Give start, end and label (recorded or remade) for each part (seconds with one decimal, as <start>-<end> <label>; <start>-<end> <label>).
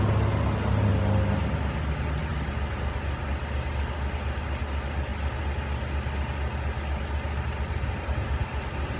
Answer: 0.0-9.0 recorded